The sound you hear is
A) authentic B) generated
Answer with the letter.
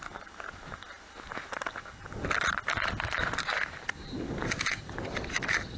A